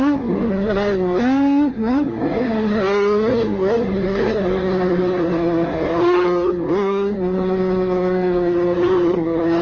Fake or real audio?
fake